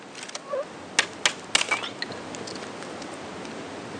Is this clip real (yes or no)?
yes